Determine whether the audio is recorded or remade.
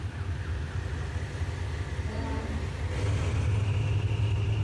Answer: recorded